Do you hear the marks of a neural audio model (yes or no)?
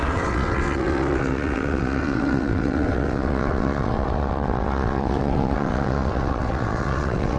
yes